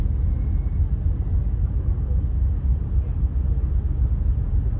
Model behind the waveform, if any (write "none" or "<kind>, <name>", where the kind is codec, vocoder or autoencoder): none